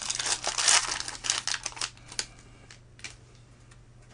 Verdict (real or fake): real